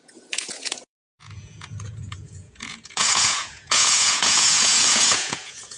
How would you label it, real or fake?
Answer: fake